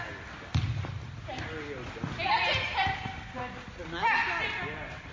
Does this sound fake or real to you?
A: real